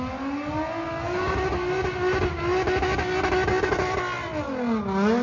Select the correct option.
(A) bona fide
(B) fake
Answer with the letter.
A